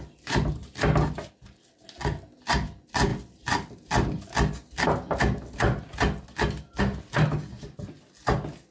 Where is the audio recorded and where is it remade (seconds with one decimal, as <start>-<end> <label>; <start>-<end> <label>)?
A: 0.0-8.7 recorded